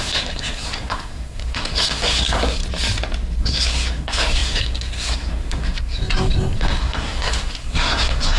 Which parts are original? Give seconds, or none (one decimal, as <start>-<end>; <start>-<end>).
2.6-3.4